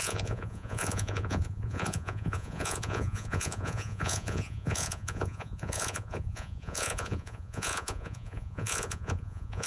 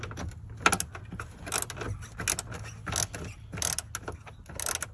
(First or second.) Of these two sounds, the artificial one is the first